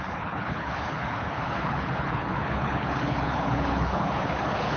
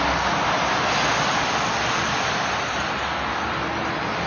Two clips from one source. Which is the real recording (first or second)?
second